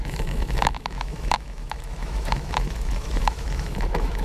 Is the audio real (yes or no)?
no